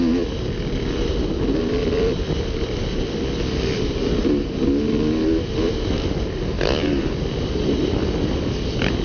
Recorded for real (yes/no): yes